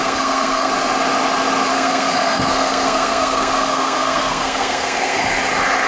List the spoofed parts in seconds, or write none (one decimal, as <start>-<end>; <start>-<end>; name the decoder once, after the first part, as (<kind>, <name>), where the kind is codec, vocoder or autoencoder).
0.0-0.7 (codec, SNAC); 1.7-5.2